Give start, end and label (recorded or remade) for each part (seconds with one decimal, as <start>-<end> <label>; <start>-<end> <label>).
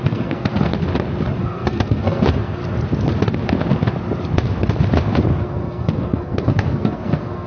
0.0-0.7 remade; 0.7-1.4 recorded; 1.4-2.6 remade; 2.6-5.4 recorded; 5.4-7.5 remade